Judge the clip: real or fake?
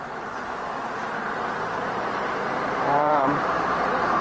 fake